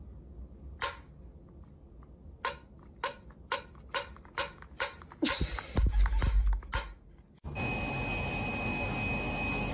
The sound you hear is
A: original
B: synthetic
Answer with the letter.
A